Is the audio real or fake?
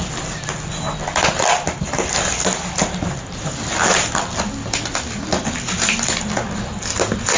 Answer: real